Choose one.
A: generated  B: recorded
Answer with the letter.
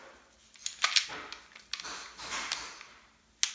B